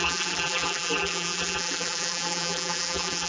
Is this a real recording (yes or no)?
no